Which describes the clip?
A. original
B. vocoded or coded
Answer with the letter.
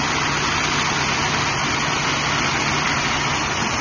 A